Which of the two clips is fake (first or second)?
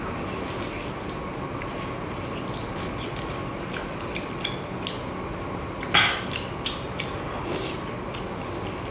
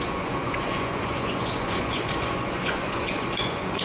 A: second